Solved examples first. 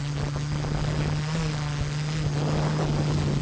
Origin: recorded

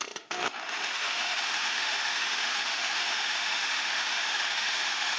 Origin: remade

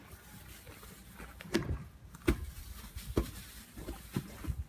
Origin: recorded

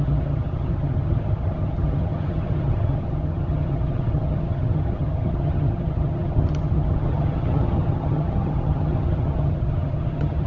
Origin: remade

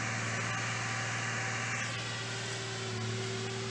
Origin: recorded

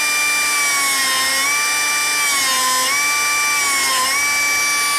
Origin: recorded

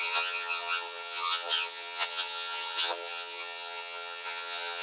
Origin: remade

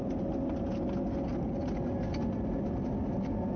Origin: recorded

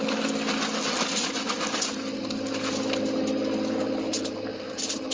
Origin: recorded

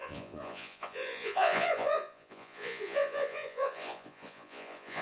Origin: remade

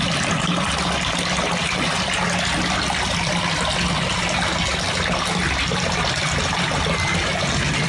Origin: recorded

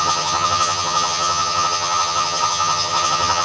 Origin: remade